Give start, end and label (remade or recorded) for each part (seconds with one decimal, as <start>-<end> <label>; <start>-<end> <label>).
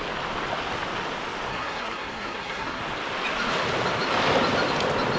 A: 0.0-1.5 recorded; 1.5-2.8 remade; 2.8-5.2 recorded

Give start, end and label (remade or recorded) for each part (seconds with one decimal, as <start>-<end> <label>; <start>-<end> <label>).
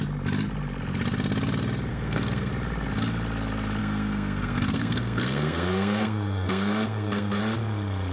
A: 0.0-1.9 recorded; 1.9-2.5 remade; 2.5-3.8 recorded; 3.8-7.4 remade; 7.4-8.1 recorded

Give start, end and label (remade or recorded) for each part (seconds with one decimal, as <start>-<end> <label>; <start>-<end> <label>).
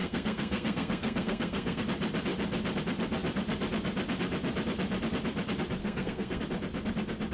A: 0.0-1.8 remade; 1.8-5.8 recorded; 5.8-6.4 remade; 6.4-7.3 recorded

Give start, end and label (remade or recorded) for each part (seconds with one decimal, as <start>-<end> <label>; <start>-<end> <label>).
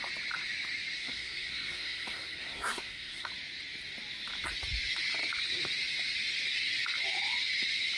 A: 0.0-1.0 recorded; 1.0-3.3 remade; 3.3-8.0 recorded